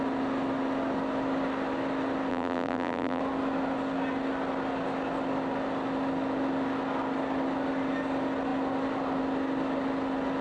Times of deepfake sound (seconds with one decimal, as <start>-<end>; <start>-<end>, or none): 2.3-3.2